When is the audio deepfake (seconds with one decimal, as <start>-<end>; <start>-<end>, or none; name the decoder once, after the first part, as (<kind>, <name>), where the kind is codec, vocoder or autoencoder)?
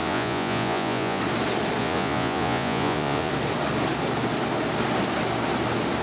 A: 0.0-1.2 (vocoder, Vocos); 1.8-3.3